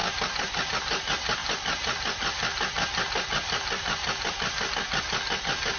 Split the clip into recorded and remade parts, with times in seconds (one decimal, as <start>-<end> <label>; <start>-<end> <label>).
0.0-0.7 remade; 0.7-1.4 recorded; 1.4-4.7 remade; 4.7-5.8 recorded